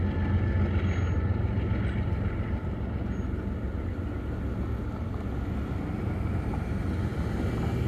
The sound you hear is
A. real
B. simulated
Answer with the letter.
A